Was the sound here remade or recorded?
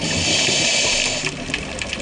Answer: recorded